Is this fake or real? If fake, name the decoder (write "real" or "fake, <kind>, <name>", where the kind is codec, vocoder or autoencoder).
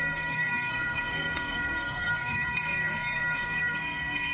fake, codec, SNAC